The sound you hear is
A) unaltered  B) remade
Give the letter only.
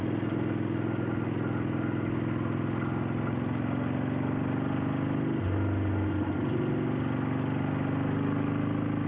A